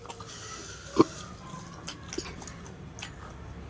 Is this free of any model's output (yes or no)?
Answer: yes